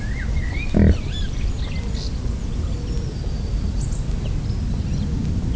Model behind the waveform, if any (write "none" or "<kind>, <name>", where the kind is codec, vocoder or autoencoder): none